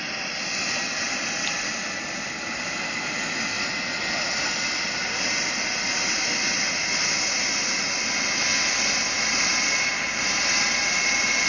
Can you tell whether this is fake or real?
real